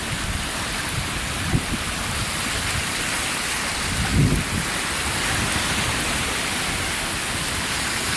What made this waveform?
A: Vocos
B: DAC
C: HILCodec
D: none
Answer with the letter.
D